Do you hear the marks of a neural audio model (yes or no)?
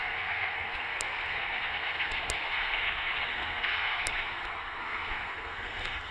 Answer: yes